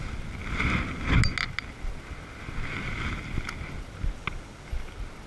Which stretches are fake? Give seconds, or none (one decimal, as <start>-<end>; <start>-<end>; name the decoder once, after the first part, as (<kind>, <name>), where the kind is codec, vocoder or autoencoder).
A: none